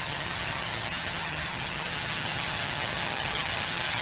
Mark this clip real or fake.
fake